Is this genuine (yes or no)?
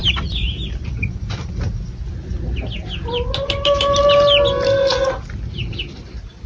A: yes